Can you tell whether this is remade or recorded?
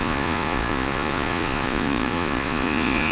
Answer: remade